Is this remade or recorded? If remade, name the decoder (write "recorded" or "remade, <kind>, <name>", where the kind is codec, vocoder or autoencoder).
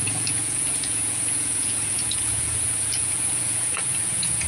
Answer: remade, vocoder, Vocos